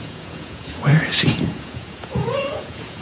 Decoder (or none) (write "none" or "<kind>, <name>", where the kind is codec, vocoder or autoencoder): vocoder, Vocos